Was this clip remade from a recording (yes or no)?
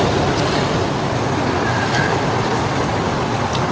no